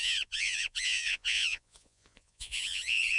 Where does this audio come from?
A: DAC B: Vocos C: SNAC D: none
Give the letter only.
B